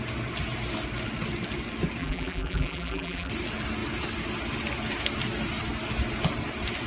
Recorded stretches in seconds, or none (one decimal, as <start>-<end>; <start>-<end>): 0.0-2.0; 3.3-6.9